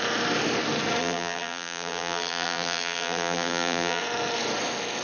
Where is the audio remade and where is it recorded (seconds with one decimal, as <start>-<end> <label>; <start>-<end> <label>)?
0.0-1.0 recorded; 1.0-4.0 remade; 4.0-5.0 recorded